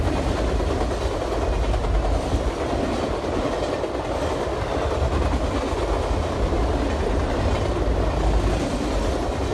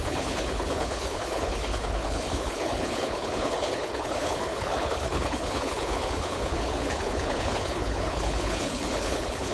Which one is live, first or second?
first